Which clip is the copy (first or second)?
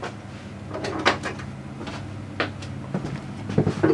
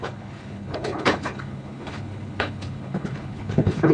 second